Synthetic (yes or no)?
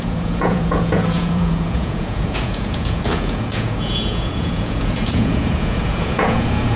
yes